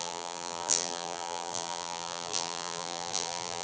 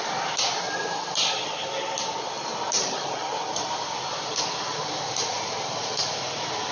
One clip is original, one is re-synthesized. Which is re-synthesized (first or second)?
first